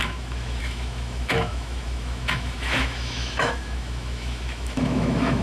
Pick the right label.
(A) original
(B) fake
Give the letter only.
B